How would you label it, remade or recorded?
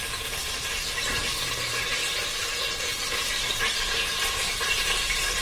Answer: remade